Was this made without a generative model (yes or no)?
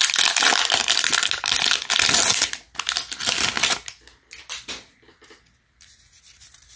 yes